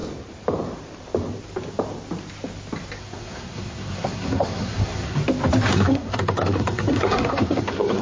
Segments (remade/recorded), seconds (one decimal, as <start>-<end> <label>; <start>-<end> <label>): 0.0-3.0 recorded; 3.0-5.2 remade; 5.2-5.7 recorded; 5.7-8.0 remade